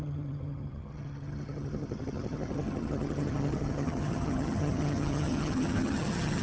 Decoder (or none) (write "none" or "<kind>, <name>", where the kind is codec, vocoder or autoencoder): vocoder, HiFi-GAN